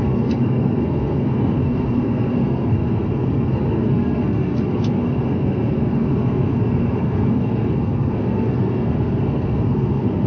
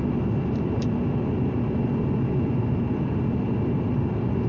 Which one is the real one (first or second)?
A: second